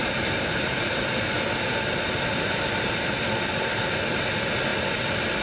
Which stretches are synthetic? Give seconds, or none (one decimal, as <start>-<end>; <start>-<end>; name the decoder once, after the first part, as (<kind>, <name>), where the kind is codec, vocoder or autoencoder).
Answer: 0.0-0.9 (vocoder, BigVGAN v2)